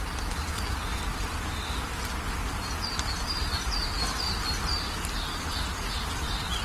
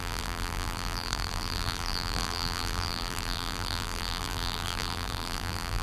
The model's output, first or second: second